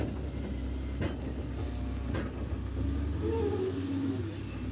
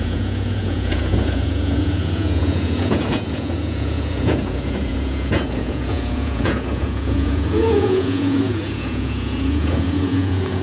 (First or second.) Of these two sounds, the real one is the first